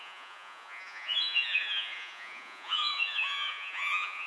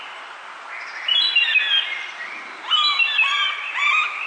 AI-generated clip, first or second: first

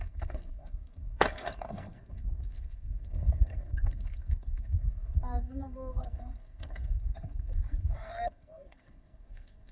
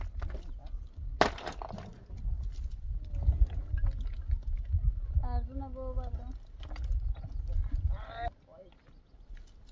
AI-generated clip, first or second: first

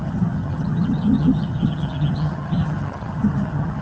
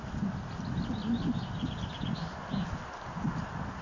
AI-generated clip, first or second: first